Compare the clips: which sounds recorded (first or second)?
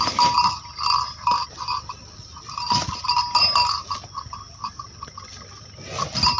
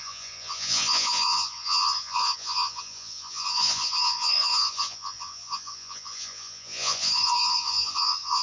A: first